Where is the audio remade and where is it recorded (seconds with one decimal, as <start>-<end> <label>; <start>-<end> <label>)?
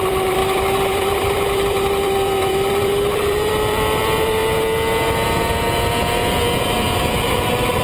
0.0-4.4 remade; 4.4-7.8 recorded